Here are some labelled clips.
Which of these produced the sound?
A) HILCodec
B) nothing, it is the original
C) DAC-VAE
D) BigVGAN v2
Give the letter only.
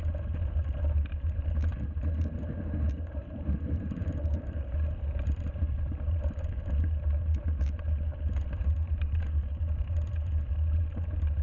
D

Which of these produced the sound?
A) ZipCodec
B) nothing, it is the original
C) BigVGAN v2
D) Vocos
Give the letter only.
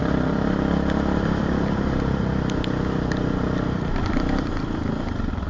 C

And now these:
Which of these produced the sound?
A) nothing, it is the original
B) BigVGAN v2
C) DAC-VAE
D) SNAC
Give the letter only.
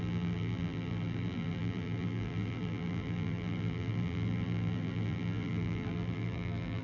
B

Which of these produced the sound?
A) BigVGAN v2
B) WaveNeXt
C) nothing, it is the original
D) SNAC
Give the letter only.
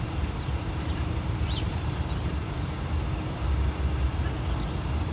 A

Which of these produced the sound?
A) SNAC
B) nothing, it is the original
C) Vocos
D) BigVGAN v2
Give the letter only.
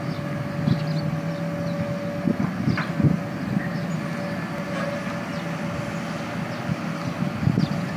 B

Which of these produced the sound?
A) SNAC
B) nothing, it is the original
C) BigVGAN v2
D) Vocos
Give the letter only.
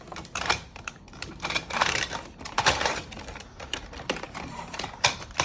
C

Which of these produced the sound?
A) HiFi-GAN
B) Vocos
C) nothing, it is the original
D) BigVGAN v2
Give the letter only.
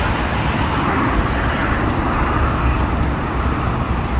C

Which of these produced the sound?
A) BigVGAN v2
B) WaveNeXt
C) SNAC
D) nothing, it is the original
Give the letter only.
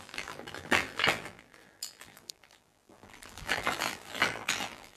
A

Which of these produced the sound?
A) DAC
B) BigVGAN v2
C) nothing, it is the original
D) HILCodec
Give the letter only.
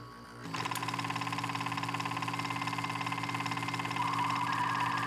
C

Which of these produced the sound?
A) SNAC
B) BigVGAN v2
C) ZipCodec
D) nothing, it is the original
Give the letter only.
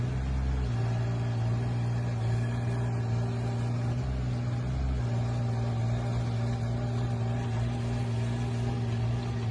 D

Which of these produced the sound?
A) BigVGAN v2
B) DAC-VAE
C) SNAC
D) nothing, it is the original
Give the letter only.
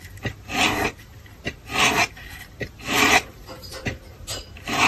D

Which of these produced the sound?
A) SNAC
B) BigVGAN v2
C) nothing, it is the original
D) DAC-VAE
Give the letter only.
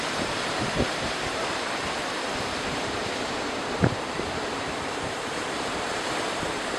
B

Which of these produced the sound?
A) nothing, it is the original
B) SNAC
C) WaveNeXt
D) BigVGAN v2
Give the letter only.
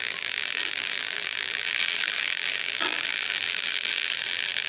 D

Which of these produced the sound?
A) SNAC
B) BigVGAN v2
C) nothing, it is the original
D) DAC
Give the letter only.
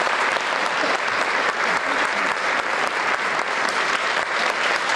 B